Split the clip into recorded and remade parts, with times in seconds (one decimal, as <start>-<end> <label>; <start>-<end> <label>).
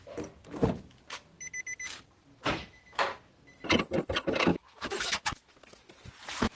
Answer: 0.0-4.5 recorded; 4.5-5.5 remade; 5.5-6.5 recorded